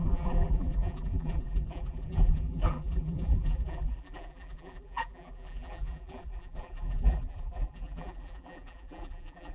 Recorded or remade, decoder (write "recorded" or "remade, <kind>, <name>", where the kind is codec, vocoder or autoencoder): remade, vocoder, BigVGAN v2